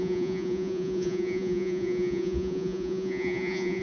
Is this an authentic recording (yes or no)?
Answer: no